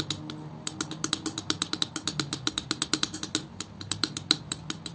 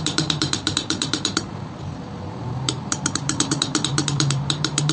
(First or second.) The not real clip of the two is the second